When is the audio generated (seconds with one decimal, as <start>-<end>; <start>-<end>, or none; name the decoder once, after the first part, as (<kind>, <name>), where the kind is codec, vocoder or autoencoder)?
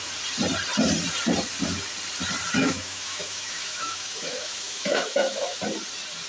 2.6-5.6 (autoencoder, DAC-VAE)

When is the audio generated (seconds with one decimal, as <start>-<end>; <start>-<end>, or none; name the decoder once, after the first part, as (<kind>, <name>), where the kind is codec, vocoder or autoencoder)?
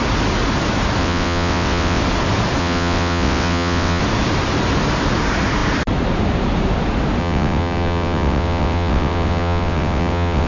1.0-2.0 (vocoder, WaveNeXt); 2.6-4.0; 7.2-10.5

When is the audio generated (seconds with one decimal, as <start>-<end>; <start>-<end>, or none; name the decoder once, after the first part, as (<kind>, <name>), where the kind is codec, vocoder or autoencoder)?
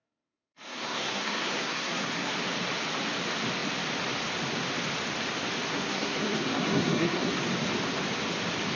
0.0-2.3 (codec, SNAC); 5.7-7.3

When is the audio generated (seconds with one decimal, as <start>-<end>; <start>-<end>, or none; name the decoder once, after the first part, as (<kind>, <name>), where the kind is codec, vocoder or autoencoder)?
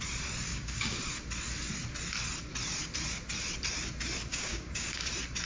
0.5-1.1 (codec, DAC); 4.3-5.1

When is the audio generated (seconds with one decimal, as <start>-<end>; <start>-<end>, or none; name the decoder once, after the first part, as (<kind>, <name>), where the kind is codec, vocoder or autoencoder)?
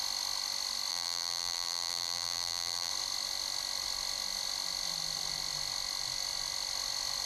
0.9-2.9 (vocoder, BigVGAN v2)